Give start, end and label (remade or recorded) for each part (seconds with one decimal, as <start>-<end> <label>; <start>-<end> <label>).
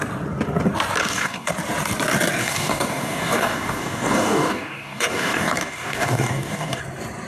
0.0-1.0 recorded; 1.0-1.5 remade; 1.5-2.4 recorded; 2.4-6.8 remade; 6.8-7.3 recorded